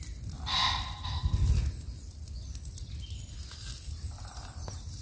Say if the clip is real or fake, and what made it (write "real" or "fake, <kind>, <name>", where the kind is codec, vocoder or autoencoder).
real